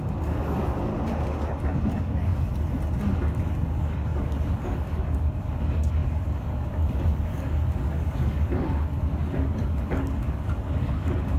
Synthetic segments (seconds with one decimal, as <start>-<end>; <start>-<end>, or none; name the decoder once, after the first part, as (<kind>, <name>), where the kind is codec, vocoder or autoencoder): 0.0-0.9 (codec, DAC); 1.6-2.5; 3.1-11.4